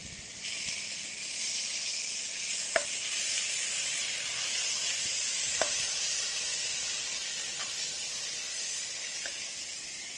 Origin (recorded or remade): recorded